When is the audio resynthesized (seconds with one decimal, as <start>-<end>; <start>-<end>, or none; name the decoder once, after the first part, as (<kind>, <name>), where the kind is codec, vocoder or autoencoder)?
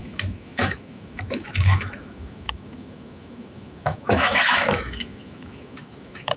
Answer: 0.0-6.4 (autoencoder, DAC-VAE)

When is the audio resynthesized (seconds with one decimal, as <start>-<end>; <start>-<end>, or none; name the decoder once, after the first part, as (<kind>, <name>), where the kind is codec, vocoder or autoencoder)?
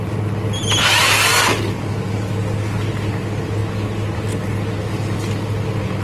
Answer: none